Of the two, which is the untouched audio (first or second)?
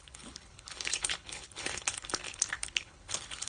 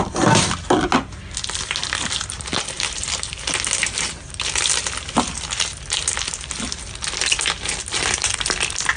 second